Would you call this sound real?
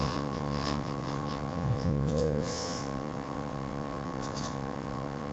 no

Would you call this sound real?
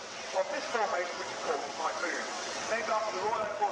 no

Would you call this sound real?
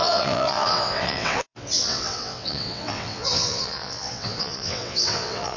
no